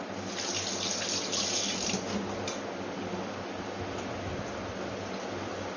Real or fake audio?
real